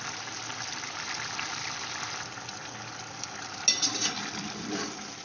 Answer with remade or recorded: recorded